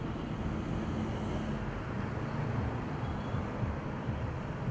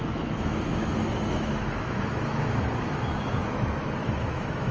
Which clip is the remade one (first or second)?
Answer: second